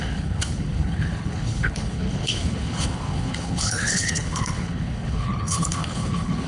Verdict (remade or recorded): remade